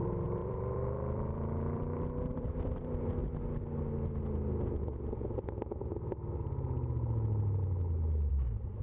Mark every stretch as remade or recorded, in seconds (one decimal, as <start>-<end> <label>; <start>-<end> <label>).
0.0-3.2 remade; 3.2-8.3 recorded; 8.3-8.8 remade